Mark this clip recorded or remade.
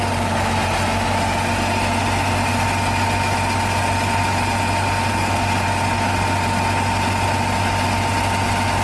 recorded